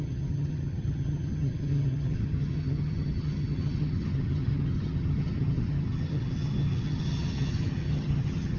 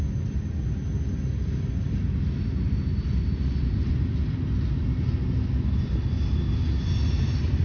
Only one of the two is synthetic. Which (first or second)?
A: first